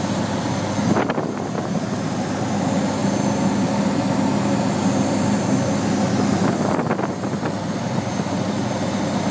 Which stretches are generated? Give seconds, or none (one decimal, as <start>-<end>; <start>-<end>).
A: none